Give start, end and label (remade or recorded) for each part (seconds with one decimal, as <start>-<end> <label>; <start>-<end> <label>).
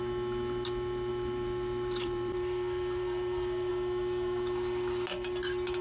0.0-1.1 recorded; 1.1-3.7 remade; 3.7-5.8 recorded